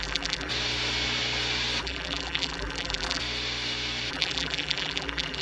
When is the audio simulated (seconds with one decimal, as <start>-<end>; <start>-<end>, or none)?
0.0-0.5; 1.8-3.2; 4.1-5.4